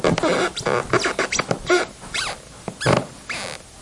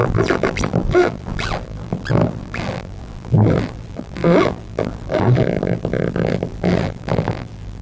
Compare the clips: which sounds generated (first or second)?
second